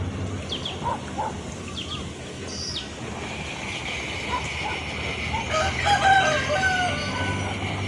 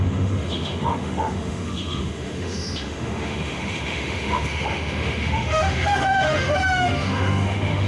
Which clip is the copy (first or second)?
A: second